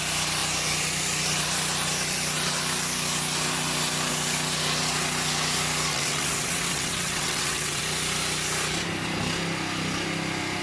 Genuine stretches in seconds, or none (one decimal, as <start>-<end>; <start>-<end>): 0.0-5.9; 7.8-10.6